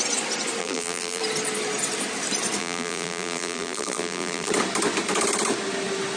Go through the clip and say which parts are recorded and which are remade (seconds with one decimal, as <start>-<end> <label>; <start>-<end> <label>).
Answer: 0.0-0.6 recorded; 0.6-1.2 remade; 1.2-2.6 recorded; 2.6-4.5 remade; 4.5-6.2 recorded